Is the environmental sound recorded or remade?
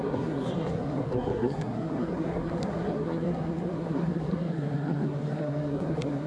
remade